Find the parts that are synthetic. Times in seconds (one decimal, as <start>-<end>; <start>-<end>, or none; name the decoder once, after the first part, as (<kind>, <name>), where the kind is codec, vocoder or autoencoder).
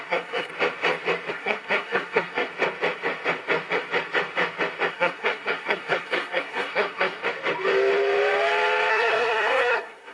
0.0-0.5 (codec, SNAC); 1.3-2.5; 4.9-7.2; 8.9-10.1